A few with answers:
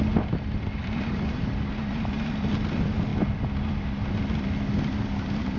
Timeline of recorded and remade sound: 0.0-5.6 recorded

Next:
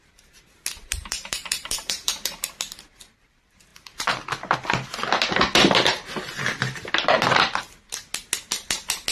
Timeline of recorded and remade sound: 0.0-0.9 recorded; 0.9-2.5 remade; 2.5-9.1 recorded

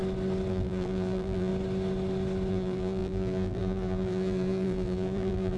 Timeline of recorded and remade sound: 0.0-0.5 recorded; 0.5-1.5 remade; 1.5-2.5 recorded; 2.5-5.6 remade

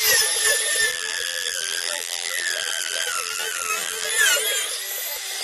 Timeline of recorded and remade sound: 0.0-0.9 recorded; 0.9-4.1 remade; 4.1-5.4 recorded